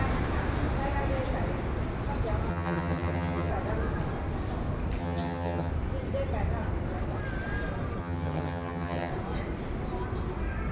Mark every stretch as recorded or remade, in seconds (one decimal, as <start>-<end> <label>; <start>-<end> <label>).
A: 0.0-2.5 recorded; 2.5-3.5 remade; 3.5-5.0 recorded; 5.0-5.7 remade; 5.7-8.0 recorded; 8.0-9.1 remade; 9.1-10.7 recorded